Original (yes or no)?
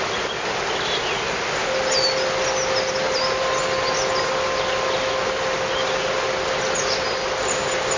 yes